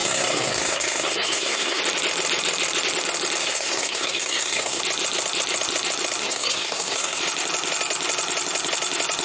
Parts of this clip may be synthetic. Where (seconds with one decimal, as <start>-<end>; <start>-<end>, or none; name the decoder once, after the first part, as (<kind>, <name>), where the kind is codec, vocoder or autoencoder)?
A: 0.0-1.8 (codec, SNAC); 3.4-4.8; 6.2-7.2